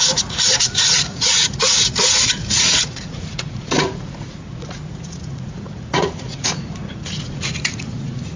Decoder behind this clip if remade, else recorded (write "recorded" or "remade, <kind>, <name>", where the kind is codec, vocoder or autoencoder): remade, vocoder, Vocos